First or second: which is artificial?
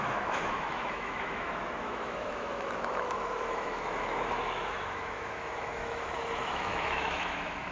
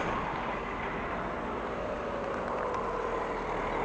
first